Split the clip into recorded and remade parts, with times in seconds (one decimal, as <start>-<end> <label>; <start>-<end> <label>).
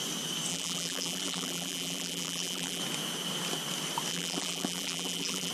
0.0-0.5 recorded; 0.5-2.8 remade; 2.8-4.1 recorded; 4.1-5.5 remade